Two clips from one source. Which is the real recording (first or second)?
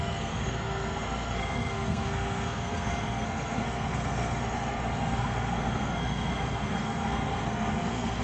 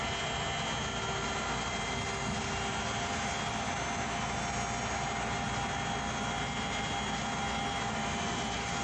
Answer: second